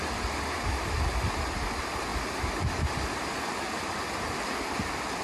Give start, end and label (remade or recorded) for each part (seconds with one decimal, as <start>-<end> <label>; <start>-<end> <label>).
0.0-5.2 recorded